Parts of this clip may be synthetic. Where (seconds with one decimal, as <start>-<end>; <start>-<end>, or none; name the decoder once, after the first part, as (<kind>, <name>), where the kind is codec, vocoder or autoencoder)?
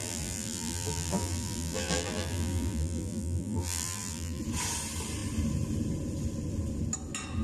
0.0-4.4 (vocoder, BigVGAN v2)